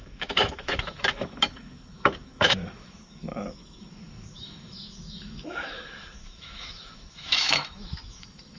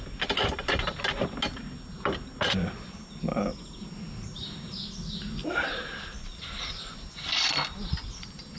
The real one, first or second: second